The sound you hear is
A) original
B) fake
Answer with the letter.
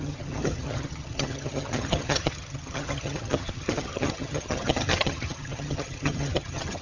B